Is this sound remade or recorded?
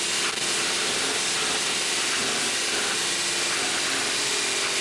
recorded